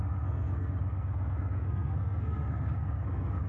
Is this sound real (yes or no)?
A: no